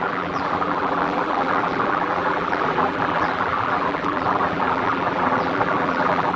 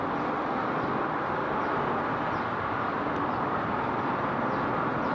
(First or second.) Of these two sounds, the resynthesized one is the first